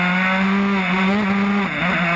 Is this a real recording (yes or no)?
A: yes